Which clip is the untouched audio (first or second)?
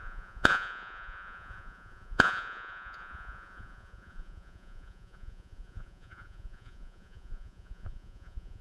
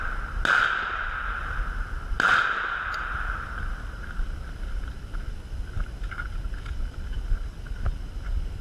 second